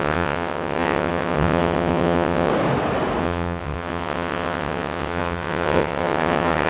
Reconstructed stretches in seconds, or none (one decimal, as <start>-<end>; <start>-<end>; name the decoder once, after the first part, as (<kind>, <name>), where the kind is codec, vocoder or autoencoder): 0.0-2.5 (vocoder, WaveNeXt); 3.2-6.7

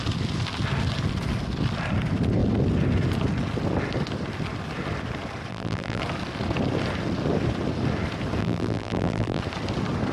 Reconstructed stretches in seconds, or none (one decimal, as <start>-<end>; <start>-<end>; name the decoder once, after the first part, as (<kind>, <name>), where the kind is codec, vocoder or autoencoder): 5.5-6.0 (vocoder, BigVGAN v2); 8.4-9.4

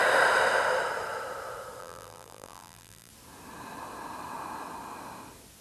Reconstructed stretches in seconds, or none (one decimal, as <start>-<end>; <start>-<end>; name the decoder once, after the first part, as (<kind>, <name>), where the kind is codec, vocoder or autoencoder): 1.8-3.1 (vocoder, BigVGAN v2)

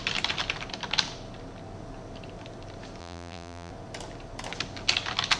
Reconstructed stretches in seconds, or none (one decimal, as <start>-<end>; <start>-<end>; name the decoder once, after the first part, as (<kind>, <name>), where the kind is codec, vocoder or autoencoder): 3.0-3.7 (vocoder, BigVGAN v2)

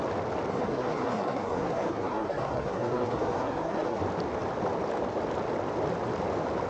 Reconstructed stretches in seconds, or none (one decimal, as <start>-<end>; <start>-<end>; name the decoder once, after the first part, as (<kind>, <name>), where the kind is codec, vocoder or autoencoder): 0.5-4.0 (codec, SNAC)